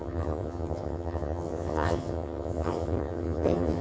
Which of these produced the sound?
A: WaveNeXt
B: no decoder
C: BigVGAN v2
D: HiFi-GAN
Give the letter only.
D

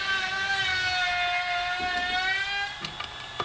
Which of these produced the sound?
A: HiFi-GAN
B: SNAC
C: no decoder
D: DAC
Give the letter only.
C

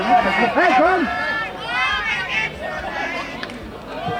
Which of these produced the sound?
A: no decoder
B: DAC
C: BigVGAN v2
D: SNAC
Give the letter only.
C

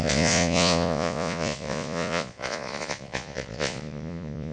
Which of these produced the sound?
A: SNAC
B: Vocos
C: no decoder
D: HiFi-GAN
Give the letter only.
B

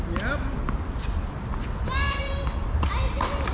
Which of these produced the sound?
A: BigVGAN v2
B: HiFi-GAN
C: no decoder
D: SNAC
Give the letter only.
C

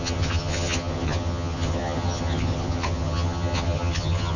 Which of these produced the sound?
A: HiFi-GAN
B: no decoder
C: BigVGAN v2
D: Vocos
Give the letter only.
A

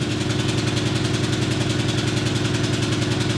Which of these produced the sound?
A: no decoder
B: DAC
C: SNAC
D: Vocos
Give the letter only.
A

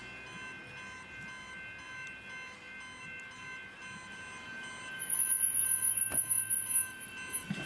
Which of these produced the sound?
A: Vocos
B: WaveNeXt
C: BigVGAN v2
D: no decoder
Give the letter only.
D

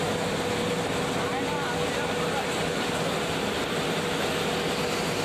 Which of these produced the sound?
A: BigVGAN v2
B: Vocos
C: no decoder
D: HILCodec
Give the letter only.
C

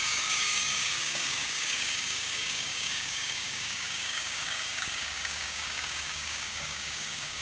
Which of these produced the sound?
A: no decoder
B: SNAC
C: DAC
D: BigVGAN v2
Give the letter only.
C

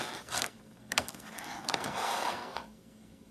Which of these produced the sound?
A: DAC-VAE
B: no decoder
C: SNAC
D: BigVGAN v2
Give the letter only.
C